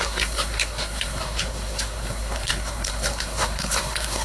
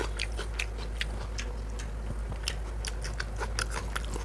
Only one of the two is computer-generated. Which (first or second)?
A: first